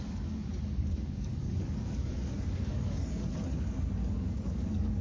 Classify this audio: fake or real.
fake